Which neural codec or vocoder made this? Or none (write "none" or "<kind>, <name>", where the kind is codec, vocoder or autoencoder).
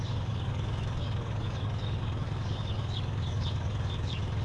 codec, DAC